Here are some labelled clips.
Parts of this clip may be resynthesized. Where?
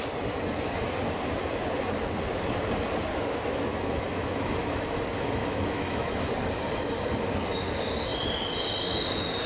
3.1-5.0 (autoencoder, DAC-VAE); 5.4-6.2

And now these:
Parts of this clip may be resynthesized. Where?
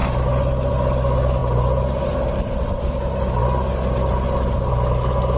none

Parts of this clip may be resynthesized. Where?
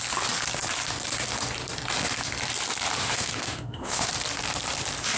3.0-4.1 (autoencoder, DAC-VAE)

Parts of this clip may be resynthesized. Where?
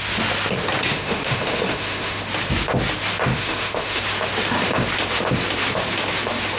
0.9-2.2 (autoencoder, DAC-VAE); 3.3-4.0